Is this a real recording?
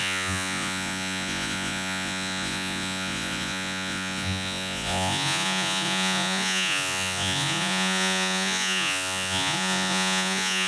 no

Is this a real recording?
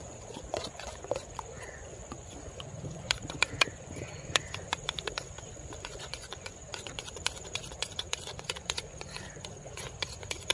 no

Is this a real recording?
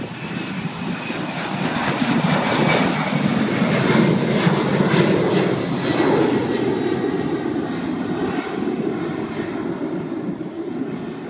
yes